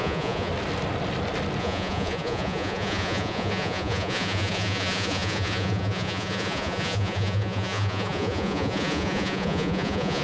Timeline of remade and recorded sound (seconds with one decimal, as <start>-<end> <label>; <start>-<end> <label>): 0.0-0.5 remade; 0.5-1.6 recorded; 1.6-10.2 remade